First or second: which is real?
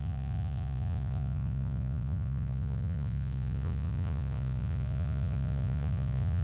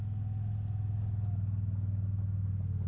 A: second